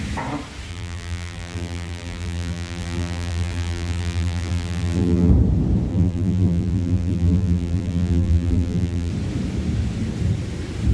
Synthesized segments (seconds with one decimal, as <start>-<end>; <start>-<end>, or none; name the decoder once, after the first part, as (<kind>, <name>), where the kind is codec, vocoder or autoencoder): 0.7-5.3 (vocoder, BigVGAN v2); 5.9-9.1